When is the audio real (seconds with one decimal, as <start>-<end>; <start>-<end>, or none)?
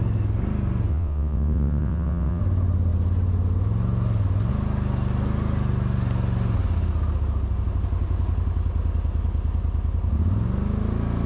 0.0-0.9; 2.4-11.3